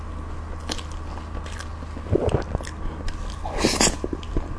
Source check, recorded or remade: recorded